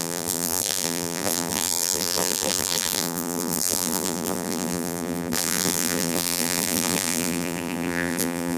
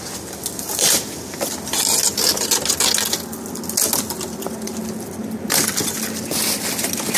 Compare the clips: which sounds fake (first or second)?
first